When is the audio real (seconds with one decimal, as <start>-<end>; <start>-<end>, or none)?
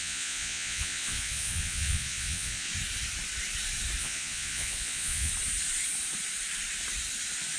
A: 2.7-4.0; 5.3-7.6